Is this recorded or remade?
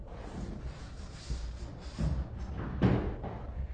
recorded